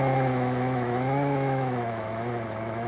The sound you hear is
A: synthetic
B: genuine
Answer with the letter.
A